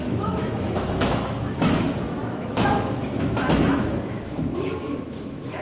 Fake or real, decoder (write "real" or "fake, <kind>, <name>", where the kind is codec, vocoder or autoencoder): fake, autoencoder, DAC-VAE